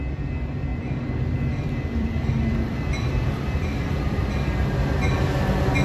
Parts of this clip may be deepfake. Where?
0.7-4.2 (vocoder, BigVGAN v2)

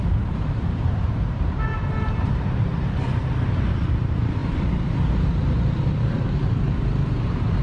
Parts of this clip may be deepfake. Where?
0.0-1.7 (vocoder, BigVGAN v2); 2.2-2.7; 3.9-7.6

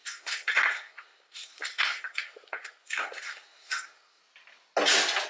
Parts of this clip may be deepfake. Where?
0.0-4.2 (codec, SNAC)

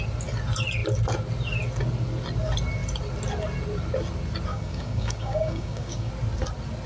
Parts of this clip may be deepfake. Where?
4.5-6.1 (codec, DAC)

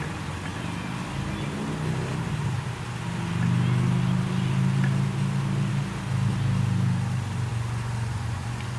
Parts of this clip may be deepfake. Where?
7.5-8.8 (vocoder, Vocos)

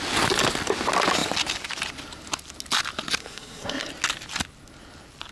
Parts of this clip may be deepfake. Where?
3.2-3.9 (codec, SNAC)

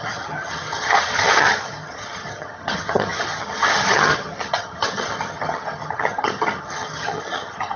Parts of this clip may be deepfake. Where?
0.0-7.8 (vocoder, HiFi-GAN)